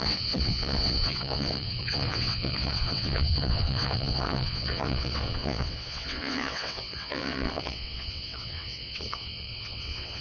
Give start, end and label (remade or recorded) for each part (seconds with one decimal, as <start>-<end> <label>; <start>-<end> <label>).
0.0-10.2 remade

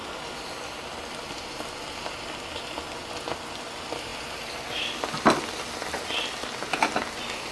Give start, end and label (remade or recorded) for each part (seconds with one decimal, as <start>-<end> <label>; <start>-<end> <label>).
0.0-7.5 recorded